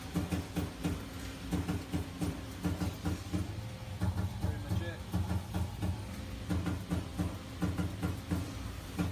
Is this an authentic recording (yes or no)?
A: yes